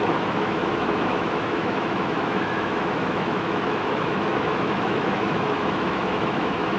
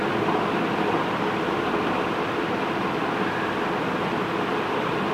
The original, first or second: second